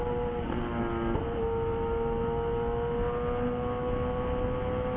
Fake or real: real